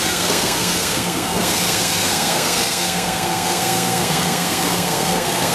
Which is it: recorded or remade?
remade